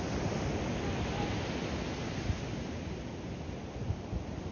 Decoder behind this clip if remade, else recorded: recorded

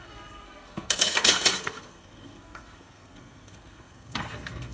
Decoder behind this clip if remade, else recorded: remade, codec, SNAC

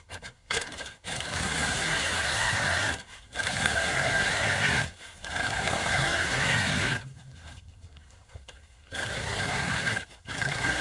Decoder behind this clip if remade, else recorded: remade, codec, SNAC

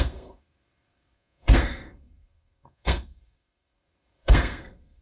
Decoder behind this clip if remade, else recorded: remade, codec, SNAC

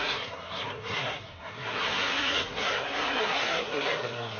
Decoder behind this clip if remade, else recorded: remade, codec, SNAC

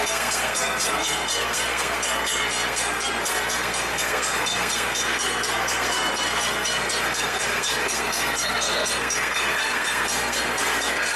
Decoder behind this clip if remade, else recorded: remade, codec, SNAC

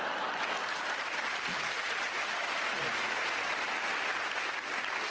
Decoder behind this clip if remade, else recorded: recorded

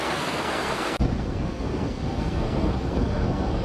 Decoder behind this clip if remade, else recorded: remade, codec, SNAC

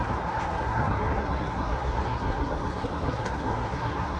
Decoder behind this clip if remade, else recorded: remade, codec, SNAC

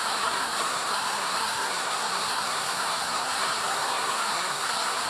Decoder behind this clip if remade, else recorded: remade, codec, SNAC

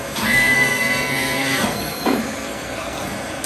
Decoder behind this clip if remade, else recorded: remade, codec, SNAC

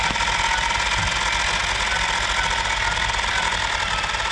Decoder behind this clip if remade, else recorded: recorded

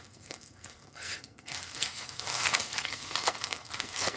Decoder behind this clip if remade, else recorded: remade, codec, SNAC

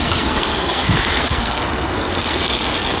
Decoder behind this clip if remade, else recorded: remade, codec, SNAC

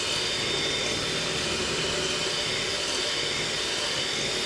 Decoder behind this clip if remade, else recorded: recorded